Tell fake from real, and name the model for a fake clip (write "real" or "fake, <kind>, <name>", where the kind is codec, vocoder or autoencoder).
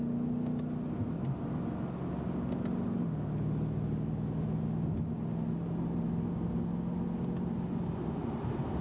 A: real